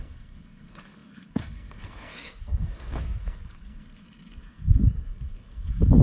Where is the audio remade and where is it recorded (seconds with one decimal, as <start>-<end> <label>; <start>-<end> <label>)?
0.0-6.0 remade